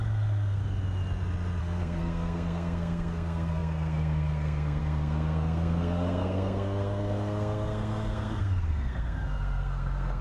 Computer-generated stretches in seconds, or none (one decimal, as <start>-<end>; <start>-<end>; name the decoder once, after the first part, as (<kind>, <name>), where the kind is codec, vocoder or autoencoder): 0.0-0.6 (codec, SNAC); 1.6-10.2